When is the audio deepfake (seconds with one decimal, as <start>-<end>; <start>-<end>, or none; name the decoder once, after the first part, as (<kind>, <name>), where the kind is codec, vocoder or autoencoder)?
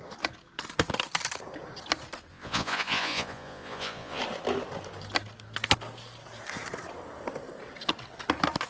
2.3-4.2 (vocoder, Vocos)